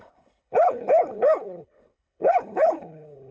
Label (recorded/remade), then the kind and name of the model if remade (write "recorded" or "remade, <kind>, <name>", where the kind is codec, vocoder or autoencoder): remade, codec, HILCodec